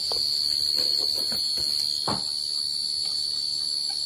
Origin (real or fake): real